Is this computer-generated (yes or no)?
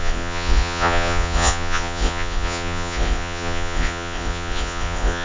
yes